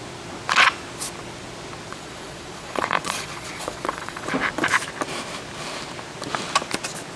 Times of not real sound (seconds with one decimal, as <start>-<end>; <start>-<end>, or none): 1.9-4.3